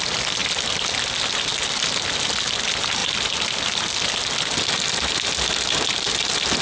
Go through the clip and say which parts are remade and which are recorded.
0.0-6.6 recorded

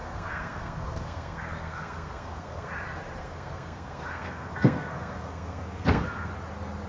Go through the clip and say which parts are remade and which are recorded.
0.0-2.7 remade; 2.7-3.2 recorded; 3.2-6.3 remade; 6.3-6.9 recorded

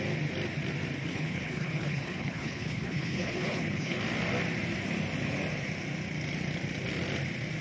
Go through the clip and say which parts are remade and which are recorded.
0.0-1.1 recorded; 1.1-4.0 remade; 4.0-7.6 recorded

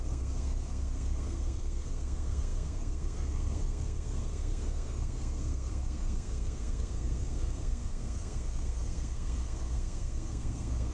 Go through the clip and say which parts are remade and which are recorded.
0.0-10.9 remade